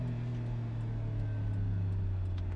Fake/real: real